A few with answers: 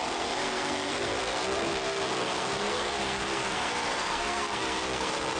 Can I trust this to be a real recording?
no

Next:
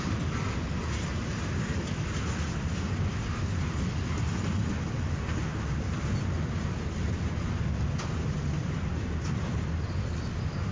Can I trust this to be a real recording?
yes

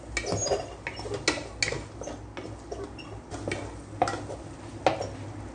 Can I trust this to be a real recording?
yes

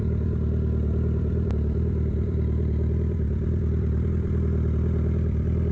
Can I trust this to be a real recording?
no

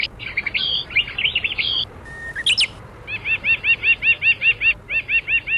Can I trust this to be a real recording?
yes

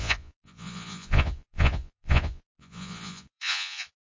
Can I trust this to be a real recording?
no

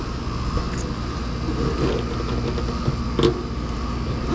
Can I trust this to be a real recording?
yes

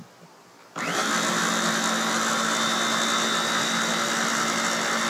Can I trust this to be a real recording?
yes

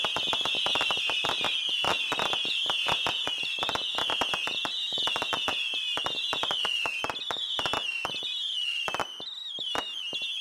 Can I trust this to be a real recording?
yes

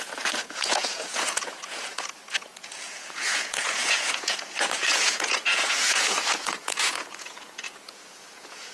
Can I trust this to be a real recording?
no